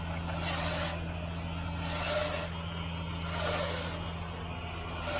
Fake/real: real